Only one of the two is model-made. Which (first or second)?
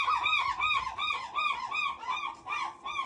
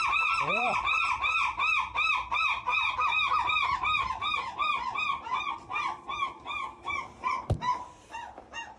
second